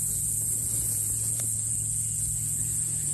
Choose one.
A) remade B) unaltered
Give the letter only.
A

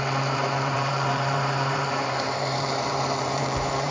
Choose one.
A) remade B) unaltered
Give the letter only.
A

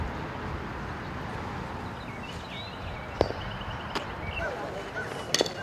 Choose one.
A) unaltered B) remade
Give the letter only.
A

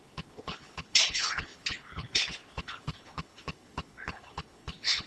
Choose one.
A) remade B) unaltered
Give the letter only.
A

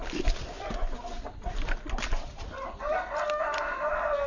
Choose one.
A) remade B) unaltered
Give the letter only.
B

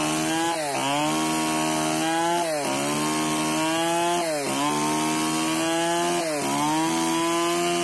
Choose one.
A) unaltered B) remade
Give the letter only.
A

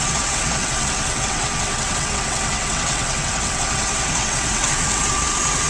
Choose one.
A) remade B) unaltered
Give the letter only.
A